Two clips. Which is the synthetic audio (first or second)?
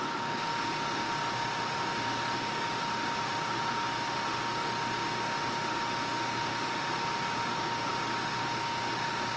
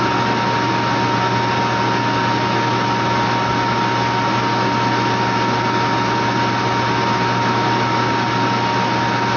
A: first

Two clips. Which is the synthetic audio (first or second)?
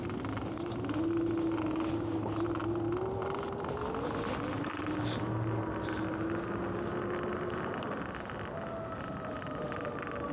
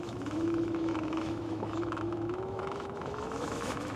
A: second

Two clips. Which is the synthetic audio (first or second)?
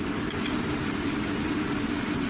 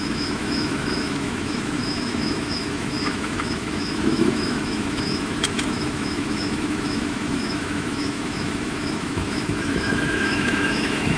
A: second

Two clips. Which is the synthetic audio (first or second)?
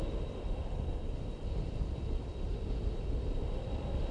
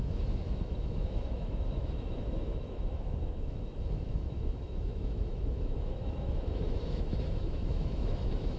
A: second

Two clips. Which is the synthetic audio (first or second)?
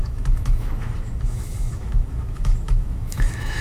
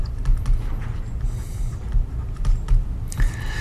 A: first